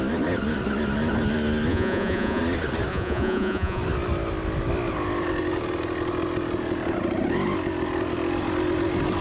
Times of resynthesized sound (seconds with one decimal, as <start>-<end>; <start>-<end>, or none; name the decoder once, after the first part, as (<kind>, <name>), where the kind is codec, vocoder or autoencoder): 1.7-2.4 (vocoder, Vocos); 2.9-3.8